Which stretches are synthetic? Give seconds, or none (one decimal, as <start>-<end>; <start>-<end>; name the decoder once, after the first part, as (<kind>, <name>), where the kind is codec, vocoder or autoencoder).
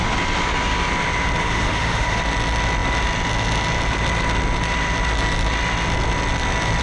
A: 1.4-2.2 (autoencoder, DAC-VAE)